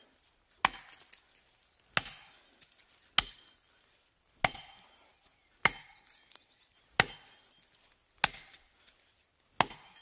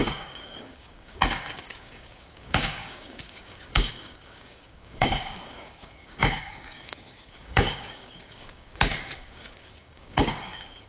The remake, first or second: second